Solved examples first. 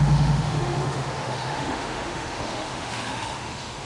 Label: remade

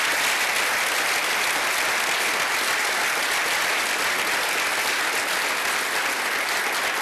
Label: recorded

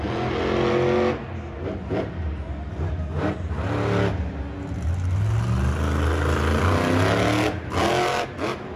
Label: recorded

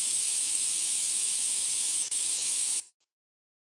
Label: remade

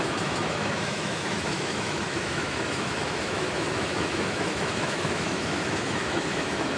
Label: remade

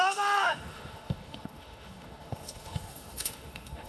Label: remade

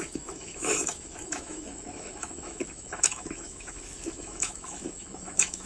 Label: remade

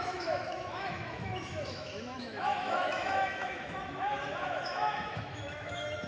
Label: remade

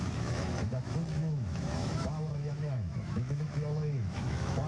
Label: remade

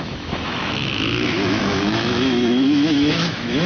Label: remade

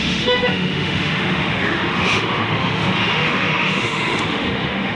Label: remade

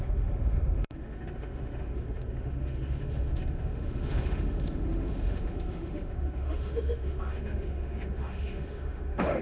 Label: remade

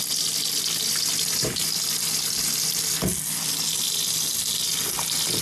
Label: recorded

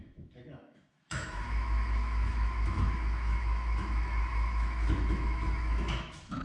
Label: remade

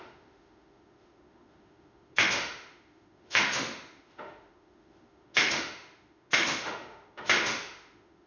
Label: remade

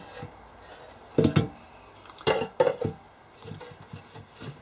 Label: recorded